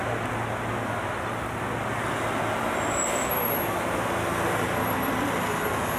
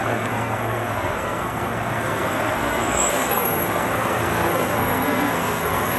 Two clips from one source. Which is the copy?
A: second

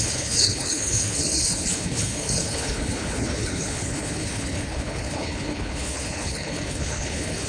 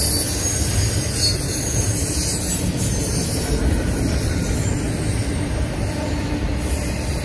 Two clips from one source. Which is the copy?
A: first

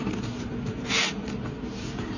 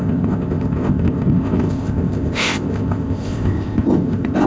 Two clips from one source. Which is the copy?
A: second